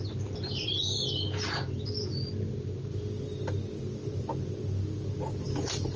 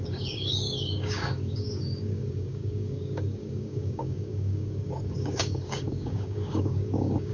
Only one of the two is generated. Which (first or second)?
second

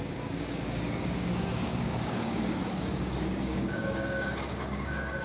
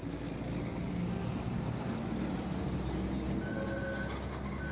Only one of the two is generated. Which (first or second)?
first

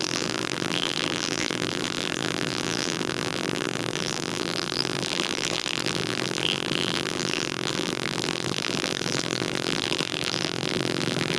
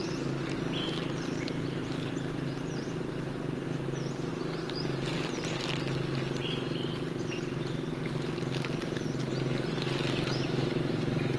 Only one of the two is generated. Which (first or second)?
first